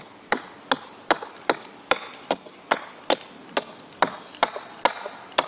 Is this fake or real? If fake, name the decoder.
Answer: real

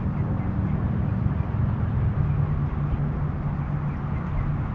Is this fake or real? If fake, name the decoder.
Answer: real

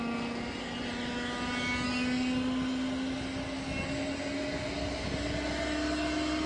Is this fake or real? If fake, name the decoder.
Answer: real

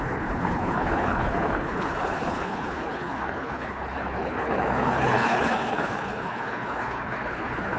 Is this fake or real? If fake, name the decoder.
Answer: fake, codec, HILCodec